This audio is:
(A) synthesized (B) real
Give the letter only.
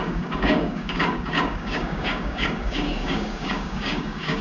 A